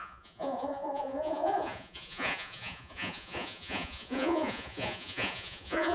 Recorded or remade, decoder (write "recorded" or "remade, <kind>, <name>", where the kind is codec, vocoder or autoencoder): remade, vocoder, Vocos